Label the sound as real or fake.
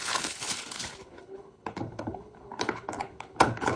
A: fake